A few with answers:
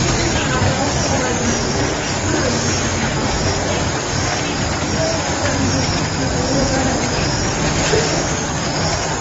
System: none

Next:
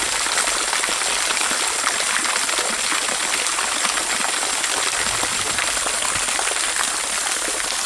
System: none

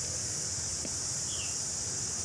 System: none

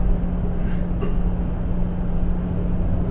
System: none